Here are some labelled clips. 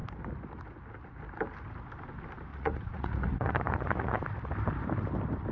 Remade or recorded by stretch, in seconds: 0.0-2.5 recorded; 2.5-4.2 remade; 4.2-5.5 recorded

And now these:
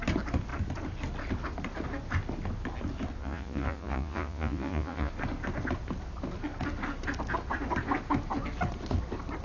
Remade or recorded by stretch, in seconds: 0.0-3.2 recorded; 3.2-5.1 remade; 5.1-9.4 recorded

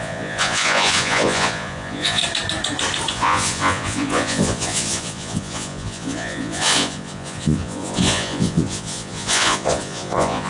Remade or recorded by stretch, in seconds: 0.0-2.2 remade; 2.2-3.1 recorded; 3.1-10.5 remade

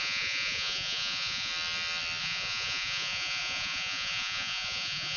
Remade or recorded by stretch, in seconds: 0.0-1.5 remade; 1.5-2.2 recorded; 2.2-5.2 remade